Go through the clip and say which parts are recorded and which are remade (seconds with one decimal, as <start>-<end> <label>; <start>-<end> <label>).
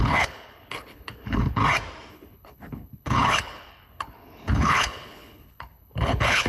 0.0-1.6 remade; 1.6-2.1 recorded; 2.1-6.5 remade